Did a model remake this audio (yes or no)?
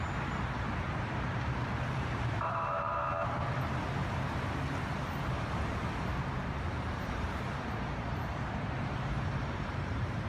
yes